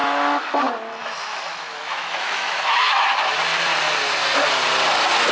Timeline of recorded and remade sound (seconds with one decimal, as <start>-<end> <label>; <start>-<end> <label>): 0.0-0.6 remade; 0.6-1.0 recorded; 1.0-3.1 remade; 3.1-5.3 recorded